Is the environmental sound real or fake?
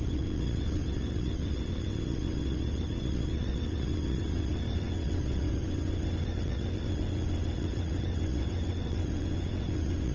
fake